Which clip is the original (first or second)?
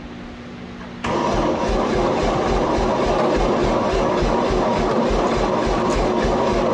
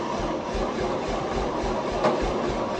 first